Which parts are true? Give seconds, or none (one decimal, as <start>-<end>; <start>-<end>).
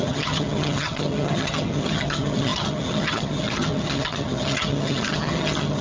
none